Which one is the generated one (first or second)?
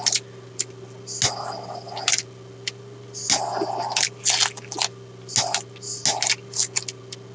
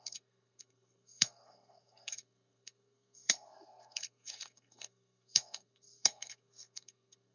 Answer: second